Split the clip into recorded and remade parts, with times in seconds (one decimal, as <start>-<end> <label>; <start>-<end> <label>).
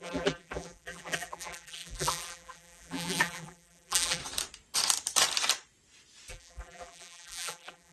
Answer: 0.0-4.2 remade; 4.2-6.3 recorded; 6.3-7.9 remade